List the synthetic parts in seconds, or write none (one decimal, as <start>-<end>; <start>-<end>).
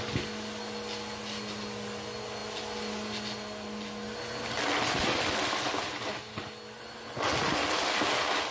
none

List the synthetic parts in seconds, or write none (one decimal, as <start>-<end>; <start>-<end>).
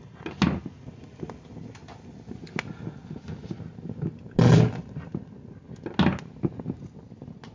none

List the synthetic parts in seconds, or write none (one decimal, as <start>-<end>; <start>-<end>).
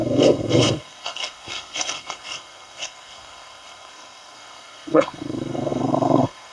0.0-6.5